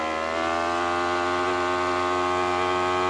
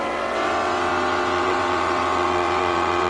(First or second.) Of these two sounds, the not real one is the second